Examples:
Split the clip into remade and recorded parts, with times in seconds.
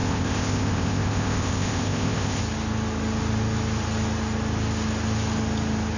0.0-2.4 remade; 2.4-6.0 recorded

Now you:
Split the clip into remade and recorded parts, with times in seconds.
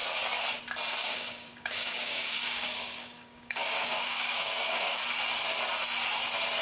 0.0-1.0 recorded; 1.0-5.0 remade; 5.0-6.6 recorded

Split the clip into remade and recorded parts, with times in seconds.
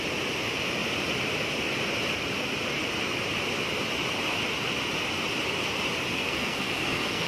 0.0-6.1 recorded; 6.1-7.3 remade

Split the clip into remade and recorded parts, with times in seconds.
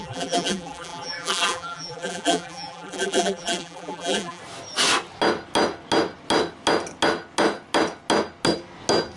0.0-4.4 remade; 4.4-9.2 recorded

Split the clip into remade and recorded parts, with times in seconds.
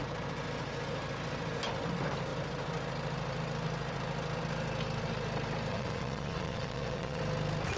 0.0-5.7 recorded; 5.7-7.2 remade; 7.2-7.8 recorded